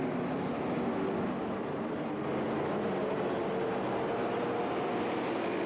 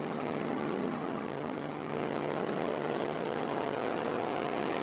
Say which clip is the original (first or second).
first